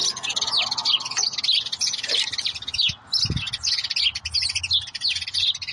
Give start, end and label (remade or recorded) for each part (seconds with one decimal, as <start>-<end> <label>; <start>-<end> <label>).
0.0-5.7 recorded